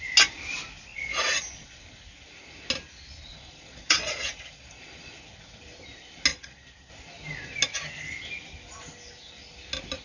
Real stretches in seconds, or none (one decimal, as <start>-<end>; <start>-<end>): 0.0-0.9; 1.8-3.3; 5.1-6.3; 6.9-10.0